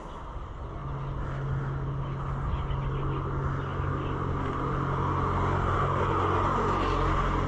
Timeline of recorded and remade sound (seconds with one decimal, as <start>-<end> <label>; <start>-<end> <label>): 0.0-7.5 recorded